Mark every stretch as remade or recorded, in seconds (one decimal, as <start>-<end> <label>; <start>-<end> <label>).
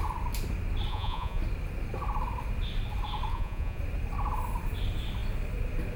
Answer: 0.0-0.9 recorded; 0.9-1.4 remade; 1.4-3.3 recorded; 3.3-3.8 remade; 3.8-6.0 recorded